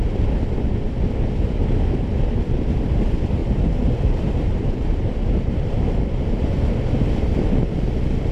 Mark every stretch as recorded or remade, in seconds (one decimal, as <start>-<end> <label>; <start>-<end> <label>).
0.0-3.4 recorded; 3.4-6.0 remade; 6.0-8.3 recorded